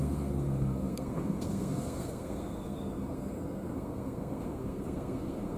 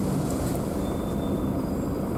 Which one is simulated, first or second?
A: first